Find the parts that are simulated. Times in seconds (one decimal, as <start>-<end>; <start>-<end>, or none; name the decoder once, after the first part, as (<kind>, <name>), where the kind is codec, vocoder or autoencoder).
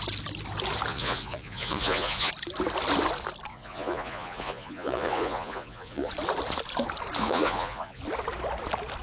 0.9-2.3 (vocoder, Vocos); 3.5-6.1; 7.2-8.0